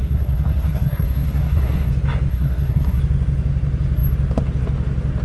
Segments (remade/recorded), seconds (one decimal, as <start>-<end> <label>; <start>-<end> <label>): 0.0-1.9 remade; 1.9-2.3 recorded; 2.3-3.0 remade; 3.0-5.2 recorded